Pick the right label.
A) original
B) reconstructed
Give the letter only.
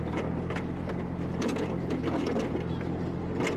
A